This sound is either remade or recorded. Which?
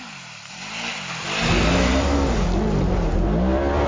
recorded